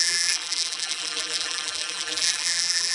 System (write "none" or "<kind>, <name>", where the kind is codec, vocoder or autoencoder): vocoder, BigVGAN v2